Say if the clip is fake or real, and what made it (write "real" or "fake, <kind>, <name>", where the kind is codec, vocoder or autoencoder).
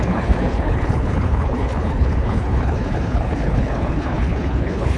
fake, codec, HILCodec